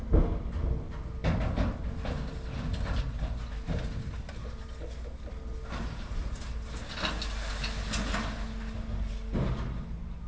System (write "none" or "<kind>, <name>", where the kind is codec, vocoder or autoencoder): none